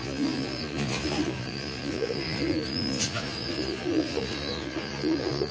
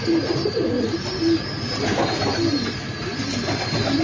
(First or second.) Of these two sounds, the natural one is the second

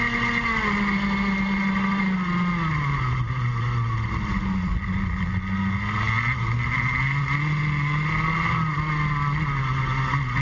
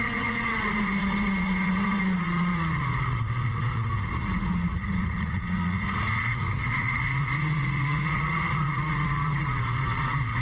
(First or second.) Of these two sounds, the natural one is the first